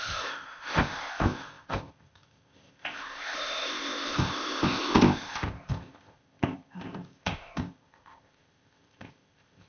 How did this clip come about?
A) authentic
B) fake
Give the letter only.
B